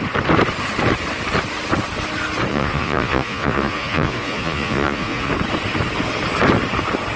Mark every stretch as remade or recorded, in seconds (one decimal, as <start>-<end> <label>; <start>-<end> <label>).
0.0-2.5 recorded; 2.5-5.3 remade; 5.3-7.2 recorded